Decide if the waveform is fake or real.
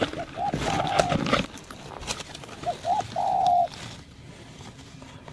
real